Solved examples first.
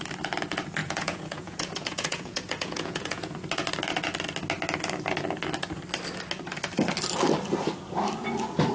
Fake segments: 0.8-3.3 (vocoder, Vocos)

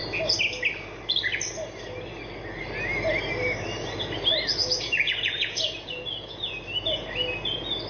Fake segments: 4.6-6.5 (vocoder, Vocos)

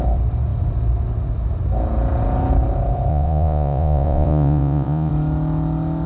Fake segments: 3.1-5.1 (vocoder, Vocos)

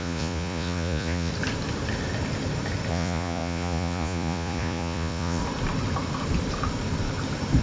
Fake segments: 0.0-1.3 (vocoder, Vocos); 2.9-5.4